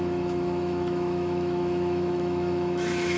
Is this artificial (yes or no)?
yes